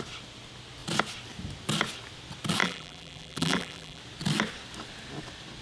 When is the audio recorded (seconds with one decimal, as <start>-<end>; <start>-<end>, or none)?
0.0-2.6; 4.0-5.6